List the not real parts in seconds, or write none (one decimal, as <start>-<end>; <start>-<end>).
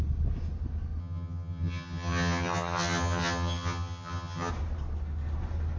1.0-4.5